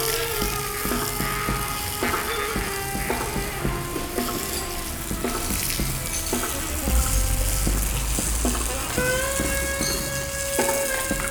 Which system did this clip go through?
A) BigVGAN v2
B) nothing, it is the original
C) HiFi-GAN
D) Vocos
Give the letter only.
B